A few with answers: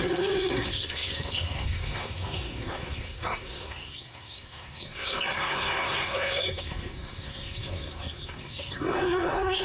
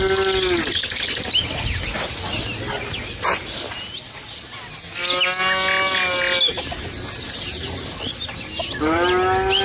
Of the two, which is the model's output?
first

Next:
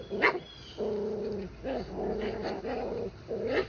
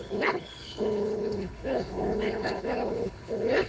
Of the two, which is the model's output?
second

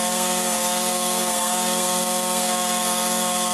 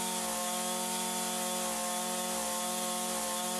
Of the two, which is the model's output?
first